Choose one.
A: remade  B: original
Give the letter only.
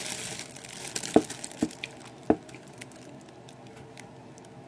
B